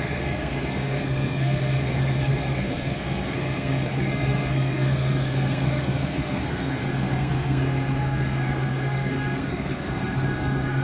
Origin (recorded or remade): remade